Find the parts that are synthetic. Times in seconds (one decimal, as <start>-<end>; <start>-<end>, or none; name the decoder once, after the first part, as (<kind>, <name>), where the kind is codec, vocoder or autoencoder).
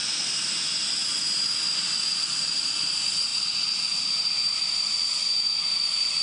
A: none